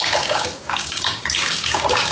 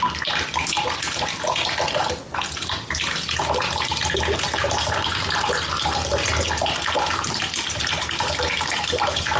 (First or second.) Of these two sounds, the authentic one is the second